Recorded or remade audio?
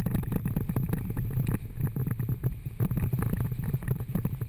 recorded